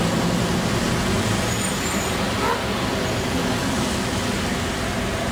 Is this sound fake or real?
real